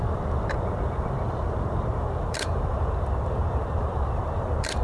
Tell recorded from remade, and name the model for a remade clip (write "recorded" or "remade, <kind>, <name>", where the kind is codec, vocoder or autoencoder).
remade, vocoder, BigVGAN v2